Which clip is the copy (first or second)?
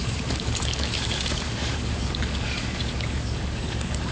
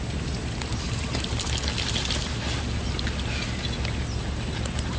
first